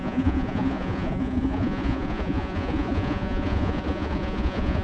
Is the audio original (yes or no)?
no